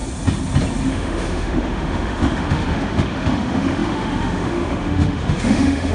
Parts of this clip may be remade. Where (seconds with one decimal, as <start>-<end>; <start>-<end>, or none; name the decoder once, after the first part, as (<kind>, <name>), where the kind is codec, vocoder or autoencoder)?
0.9-5.9 (autoencoder, DAC-VAE)